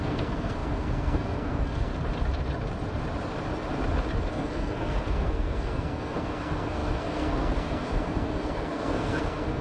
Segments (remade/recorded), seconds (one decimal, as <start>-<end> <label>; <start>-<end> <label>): 0.0-1.9 remade; 1.9-4.3 recorded; 4.3-9.6 remade